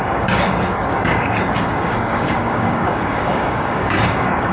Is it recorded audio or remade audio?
remade